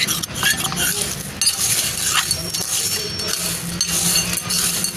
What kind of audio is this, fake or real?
real